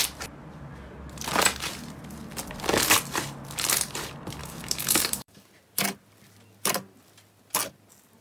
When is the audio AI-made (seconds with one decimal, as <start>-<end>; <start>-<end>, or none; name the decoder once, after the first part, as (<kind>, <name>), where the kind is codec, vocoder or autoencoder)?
4.4-5.5 (codec, DAC)

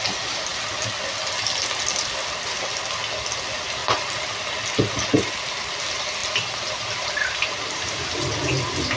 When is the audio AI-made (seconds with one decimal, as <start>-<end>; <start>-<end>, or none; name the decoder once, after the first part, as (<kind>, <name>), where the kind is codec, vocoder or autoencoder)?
none

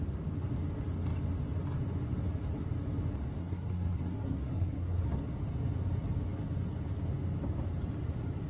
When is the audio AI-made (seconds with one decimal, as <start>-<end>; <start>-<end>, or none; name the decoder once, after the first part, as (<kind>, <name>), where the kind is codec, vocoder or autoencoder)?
3.4-5.0 (codec, SNAC)